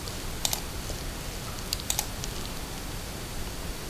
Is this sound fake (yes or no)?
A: no